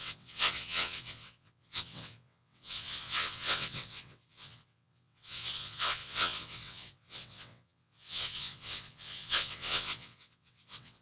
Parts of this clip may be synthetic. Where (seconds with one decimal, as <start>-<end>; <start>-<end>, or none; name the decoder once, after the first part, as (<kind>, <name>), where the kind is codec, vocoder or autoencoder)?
0.0-11.0 (vocoder, WaveNeXt)